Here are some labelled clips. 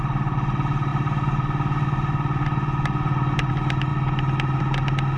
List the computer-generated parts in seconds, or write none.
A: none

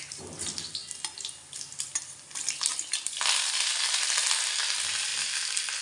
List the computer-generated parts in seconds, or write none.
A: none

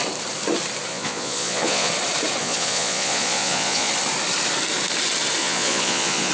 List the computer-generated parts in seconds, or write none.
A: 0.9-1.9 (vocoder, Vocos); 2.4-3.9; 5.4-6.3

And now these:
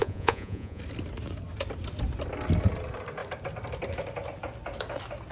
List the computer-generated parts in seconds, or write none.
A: 0.0-0.8 (vocoder, Vocos)